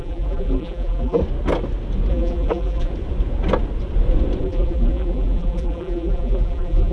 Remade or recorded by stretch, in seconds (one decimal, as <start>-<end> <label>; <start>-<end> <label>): 0.0-1.2 remade; 1.2-2.1 recorded; 2.1-2.9 remade; 2.9-4.4 recorded; 4.4-6.9 remade